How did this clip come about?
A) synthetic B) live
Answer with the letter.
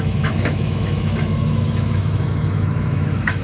A